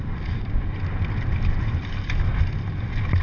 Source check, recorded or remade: recorded